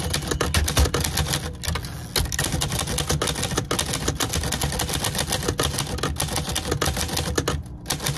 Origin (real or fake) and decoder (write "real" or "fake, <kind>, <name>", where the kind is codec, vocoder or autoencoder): real